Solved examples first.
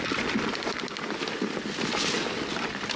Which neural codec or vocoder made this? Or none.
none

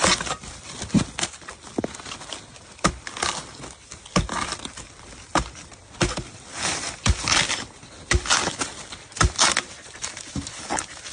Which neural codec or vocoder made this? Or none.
none